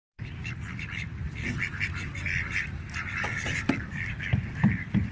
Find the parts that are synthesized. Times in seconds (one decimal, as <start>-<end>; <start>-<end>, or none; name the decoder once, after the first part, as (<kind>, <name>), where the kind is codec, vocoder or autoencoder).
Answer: 0.0-5.1 (vocoder, BigVGAN v2)